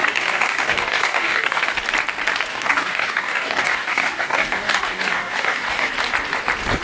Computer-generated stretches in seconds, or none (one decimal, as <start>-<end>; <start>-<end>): 0.0-1.8; 2.5-5.9